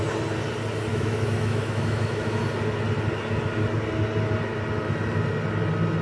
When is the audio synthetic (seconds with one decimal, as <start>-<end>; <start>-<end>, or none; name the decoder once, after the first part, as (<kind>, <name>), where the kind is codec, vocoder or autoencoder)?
0.9-2.4 (autoencoder, DAC-VAE)